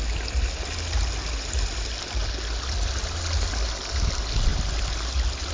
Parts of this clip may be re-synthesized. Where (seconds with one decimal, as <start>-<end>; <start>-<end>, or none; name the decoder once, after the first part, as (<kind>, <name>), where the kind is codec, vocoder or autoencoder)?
none